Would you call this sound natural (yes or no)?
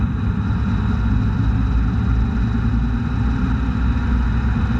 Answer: yes